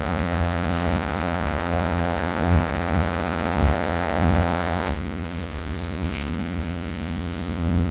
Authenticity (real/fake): fake